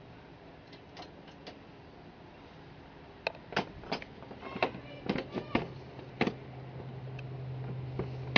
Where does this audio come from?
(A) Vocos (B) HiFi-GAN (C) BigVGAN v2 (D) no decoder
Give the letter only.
D